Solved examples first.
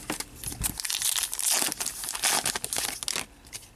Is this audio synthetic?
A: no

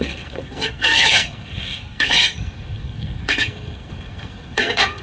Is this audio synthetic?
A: yes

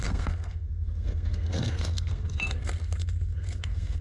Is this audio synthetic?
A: yes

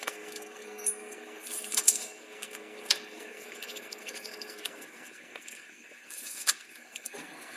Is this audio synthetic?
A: yes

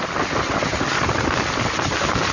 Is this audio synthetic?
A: no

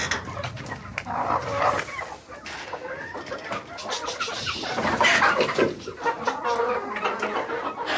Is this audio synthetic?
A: no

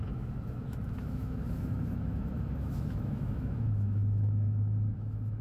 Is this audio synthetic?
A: yes